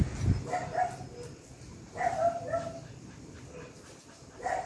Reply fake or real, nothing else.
real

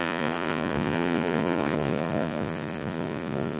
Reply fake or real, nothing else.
fake